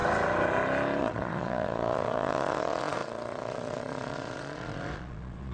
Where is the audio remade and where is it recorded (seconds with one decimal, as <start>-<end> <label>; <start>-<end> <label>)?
0.0-1.0 recorded; 1.0-5.5 remade